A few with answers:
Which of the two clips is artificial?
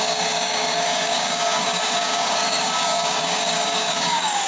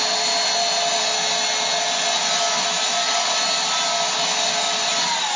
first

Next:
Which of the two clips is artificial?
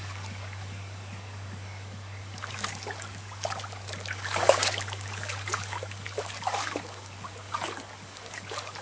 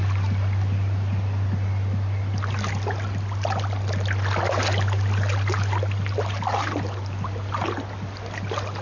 first